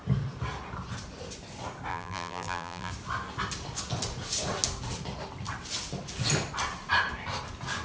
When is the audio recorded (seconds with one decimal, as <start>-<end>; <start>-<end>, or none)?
0.0-1.9; 2.9-7.8